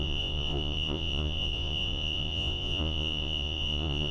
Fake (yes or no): yes